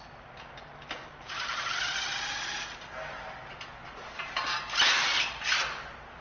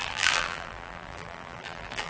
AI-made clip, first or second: second